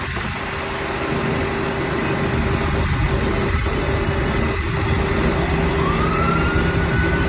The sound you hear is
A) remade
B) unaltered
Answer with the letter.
B